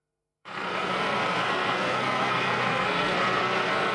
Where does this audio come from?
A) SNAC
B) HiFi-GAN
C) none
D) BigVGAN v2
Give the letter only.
A